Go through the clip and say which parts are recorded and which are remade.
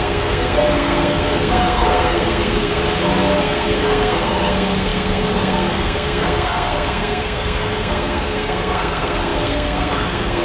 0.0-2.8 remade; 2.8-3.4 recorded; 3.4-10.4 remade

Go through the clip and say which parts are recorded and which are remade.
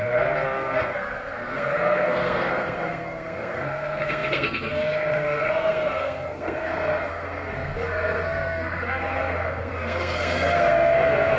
0.0-11.4 remade